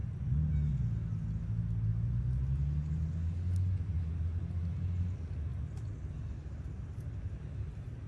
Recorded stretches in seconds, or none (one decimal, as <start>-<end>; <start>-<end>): 0.0-8.1